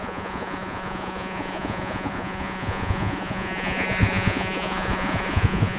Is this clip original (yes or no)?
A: no